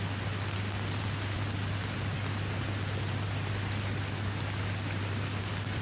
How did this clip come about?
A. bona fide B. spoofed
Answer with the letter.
A